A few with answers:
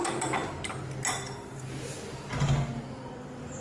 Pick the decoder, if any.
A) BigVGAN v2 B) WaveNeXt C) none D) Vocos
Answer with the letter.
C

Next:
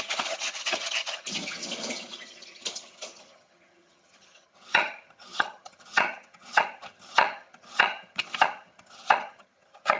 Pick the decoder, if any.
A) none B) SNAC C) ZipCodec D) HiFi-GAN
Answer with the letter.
D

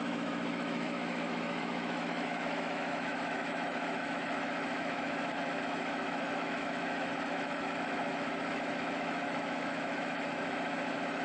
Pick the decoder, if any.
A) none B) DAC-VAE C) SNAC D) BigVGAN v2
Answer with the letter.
B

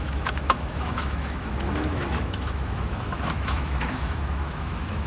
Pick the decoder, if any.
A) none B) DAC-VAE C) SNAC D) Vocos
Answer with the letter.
B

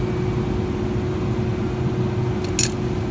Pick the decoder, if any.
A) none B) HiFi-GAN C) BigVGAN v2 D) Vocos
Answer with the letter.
A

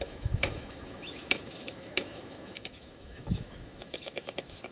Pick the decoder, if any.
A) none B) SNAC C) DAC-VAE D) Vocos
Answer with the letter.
C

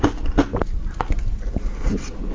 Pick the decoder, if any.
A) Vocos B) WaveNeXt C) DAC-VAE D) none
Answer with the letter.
D